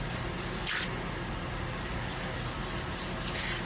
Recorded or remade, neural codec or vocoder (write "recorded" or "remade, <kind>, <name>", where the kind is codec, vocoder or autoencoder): recorded